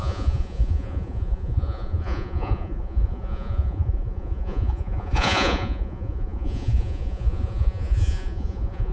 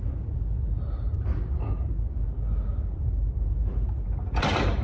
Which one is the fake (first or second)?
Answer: first